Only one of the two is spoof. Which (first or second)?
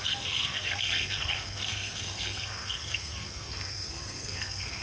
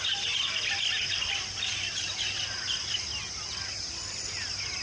first